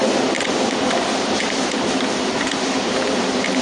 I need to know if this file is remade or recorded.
remade